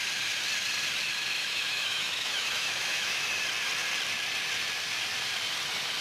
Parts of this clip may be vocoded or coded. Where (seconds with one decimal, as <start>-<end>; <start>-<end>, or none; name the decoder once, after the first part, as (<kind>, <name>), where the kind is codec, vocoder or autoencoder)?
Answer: 1.4-3.3 (autoencoder, DAC-VAE)